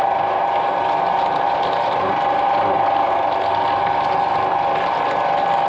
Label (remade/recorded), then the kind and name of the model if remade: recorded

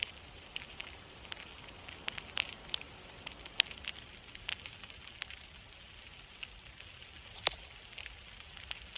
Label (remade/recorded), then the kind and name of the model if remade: recorded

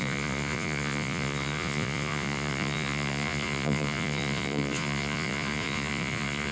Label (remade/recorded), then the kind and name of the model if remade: remade, vocoder, Vocos